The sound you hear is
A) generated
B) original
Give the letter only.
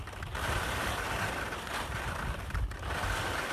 B